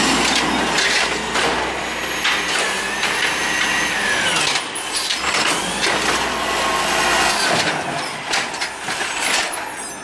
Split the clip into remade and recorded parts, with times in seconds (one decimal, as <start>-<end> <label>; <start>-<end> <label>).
0.0-10.0 recorded

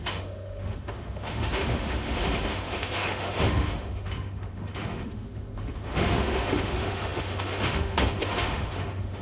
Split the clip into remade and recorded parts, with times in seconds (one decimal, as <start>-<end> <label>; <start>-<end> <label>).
0.0-9.2 remade

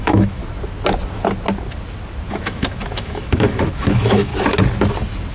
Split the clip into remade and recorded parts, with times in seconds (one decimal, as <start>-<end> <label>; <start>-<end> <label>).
0.0-0.4 remade; 0.4-2.3 recorded; 2.3-4.3 remade; 4.3-5.3 recorded

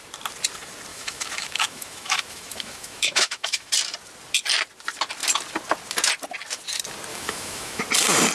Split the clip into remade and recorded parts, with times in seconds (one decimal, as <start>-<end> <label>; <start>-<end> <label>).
0.0-0.9 recorded; 0.9-3.7 remade; 3.7-7.1 recorded; 7.1-7.8 remade; 7.8-8.3 recorded